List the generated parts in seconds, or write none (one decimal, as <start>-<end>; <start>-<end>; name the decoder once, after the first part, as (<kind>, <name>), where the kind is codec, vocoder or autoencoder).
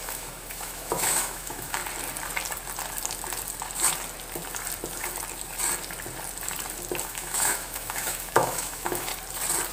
0.0-1.8 (autoencoder, DAC-VAE); 7.0-9.1